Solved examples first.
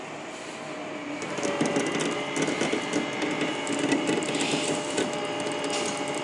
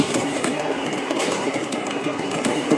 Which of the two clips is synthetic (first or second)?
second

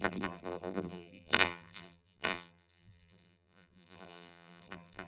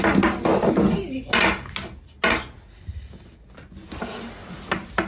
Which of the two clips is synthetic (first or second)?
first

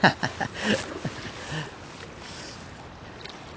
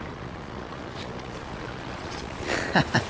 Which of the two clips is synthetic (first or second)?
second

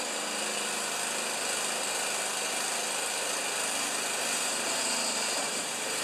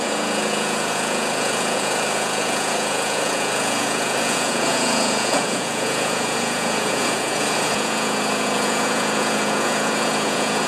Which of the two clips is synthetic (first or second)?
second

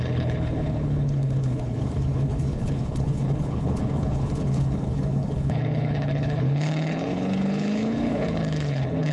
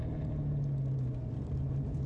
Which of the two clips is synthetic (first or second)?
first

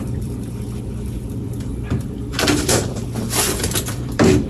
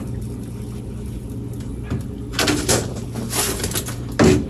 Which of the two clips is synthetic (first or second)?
first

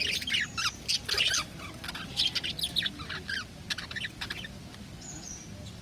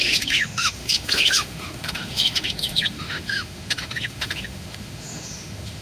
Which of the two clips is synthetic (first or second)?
second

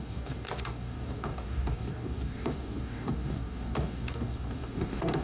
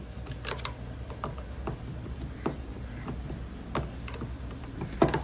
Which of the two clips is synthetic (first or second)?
first